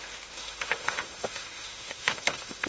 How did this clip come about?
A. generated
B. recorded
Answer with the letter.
A